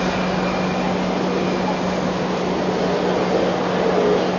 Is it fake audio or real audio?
real